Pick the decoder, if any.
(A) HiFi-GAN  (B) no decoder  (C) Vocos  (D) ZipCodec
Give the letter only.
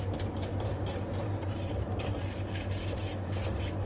B